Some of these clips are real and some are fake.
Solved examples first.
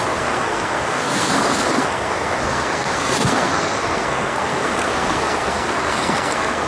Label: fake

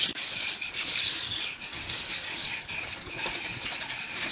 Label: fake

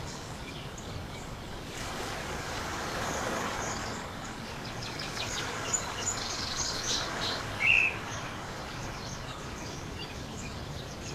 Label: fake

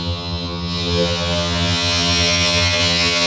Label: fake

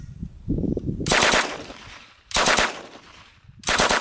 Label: fake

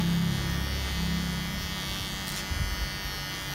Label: real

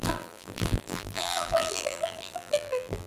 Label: fake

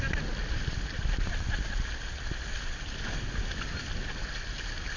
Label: real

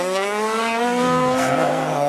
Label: fake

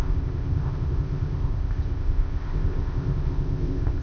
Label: fake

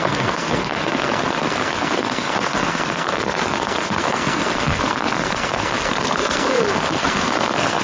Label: fake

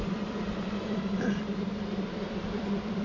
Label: fake